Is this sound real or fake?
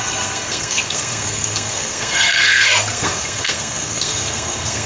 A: fake